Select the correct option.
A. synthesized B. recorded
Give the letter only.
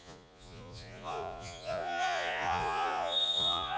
A